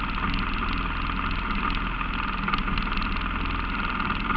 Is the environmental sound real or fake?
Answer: real